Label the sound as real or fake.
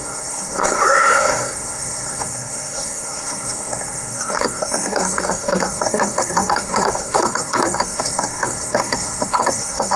fake